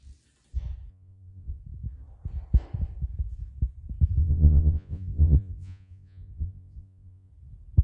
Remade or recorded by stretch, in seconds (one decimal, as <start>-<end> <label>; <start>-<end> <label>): 0.0-0.9 recorded; 0.9-1.6 remade; 1.6-4.2 recorded; 4.2-7.3 remade; 7.3-7.8 recorded